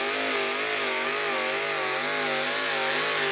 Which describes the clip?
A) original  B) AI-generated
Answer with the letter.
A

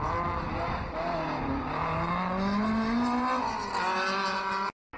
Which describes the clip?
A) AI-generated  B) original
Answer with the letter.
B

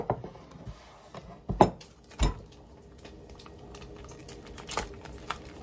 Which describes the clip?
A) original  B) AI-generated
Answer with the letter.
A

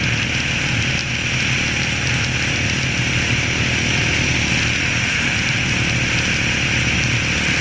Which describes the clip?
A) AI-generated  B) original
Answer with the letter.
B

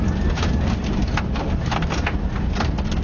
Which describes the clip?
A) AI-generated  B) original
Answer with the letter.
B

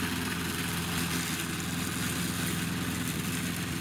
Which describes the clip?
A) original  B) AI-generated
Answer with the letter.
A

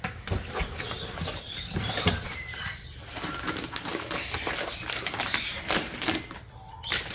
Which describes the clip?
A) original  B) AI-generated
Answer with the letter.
B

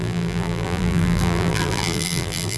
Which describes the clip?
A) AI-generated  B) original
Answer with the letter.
A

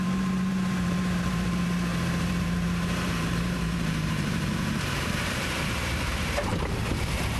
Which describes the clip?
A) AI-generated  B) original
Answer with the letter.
A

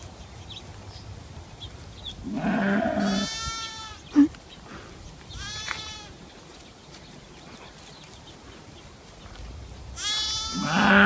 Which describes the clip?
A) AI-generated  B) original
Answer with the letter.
B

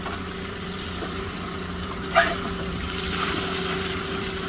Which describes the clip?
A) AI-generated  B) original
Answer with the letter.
A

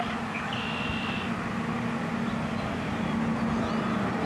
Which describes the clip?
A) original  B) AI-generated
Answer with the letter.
A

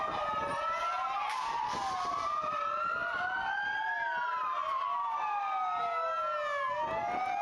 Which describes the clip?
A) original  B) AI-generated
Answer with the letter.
A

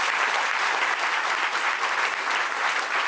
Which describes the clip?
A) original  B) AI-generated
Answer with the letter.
A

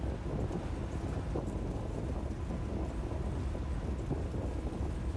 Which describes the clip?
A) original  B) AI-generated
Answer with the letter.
A